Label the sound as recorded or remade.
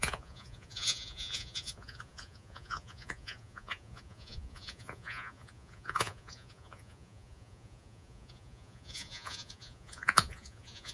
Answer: remade